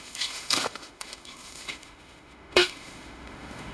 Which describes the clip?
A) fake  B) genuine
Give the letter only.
A